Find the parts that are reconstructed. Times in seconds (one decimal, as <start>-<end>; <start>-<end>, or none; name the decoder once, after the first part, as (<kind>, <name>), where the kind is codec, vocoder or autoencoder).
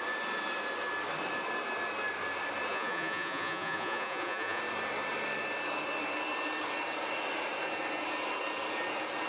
2.7-4.6 (vocoder, Vocos)